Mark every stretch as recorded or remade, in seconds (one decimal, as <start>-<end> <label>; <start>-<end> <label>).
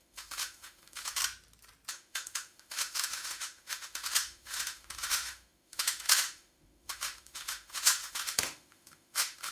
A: 0.0-1.2 remade; 1.2-1.9 recorded; 1.9-9.5 remade